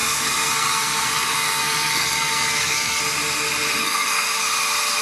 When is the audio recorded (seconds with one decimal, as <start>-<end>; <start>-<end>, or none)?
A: 3.0-3.8; 4.4-5.0